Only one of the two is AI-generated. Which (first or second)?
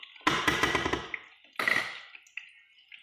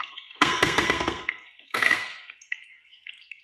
second